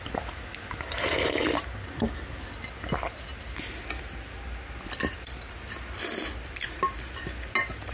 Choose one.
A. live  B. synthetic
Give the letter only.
A